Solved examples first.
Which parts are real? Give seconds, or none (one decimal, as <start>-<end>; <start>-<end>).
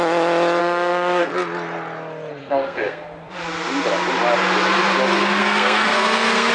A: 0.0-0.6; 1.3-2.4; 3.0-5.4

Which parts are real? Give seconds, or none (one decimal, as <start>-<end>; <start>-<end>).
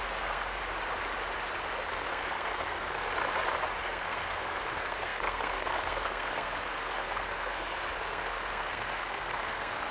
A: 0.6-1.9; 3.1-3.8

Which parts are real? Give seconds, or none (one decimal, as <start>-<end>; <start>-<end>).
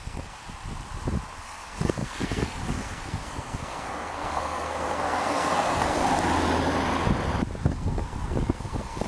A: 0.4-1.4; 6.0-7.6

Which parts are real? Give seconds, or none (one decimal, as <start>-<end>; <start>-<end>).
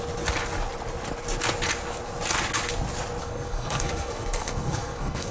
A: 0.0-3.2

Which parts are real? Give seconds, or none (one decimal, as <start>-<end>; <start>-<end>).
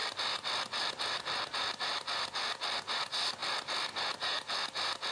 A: 0.0-5.1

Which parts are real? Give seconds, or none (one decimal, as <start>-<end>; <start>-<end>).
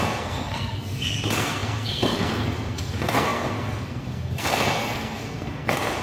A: none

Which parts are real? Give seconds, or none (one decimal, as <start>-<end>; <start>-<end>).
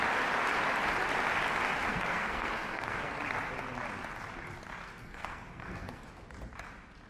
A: 0.0-1.9; 3.2-4.8; 6.1-7.1